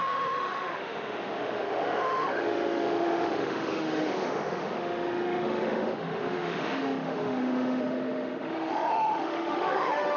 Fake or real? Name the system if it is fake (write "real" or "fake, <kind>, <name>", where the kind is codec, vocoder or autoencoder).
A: fake, autoencoder, DAC-VAE